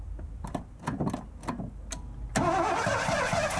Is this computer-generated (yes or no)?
no